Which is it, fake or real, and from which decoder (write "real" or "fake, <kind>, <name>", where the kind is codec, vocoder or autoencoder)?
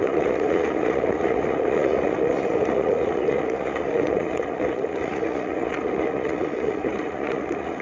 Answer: fake, vocoder, Vocos